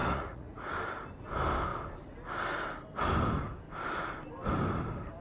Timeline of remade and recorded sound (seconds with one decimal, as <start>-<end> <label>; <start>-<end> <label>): 0.0-0.7 remade; 0.7-5.2 recorded